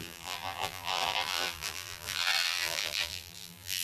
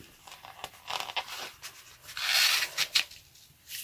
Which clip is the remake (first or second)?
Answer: first